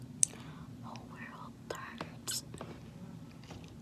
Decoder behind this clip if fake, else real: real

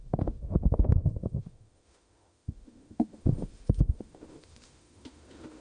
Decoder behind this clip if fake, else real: fake, autoencoder, DAC-VAE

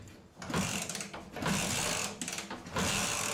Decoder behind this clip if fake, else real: real